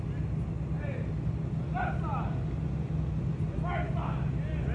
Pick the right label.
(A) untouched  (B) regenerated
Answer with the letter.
A